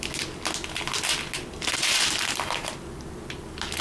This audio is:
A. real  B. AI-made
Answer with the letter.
A